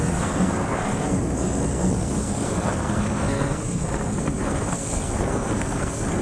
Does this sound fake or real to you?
fake